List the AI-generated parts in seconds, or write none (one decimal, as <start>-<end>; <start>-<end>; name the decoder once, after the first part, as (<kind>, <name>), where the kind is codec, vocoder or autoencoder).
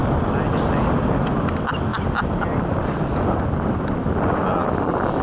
none